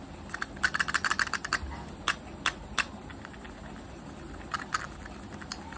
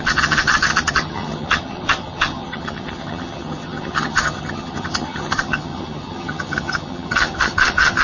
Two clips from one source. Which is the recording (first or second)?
first